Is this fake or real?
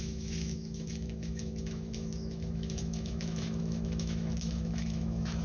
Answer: fake